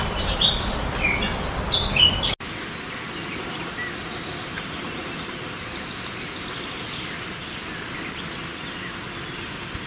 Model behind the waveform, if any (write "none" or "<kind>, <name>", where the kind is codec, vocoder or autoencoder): none